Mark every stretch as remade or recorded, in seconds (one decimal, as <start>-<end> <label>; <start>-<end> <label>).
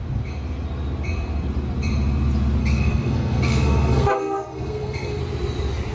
0.0-2.6 recorded; 2.6-5.2 remade; 5.2-5.9 recorded